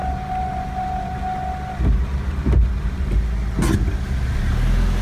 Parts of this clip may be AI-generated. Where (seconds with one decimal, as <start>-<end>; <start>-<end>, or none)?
none